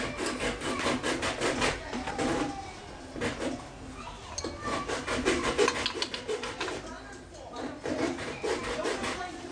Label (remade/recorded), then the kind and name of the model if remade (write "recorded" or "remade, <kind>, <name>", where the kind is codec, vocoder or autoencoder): recorded